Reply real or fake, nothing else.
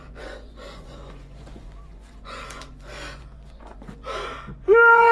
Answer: fake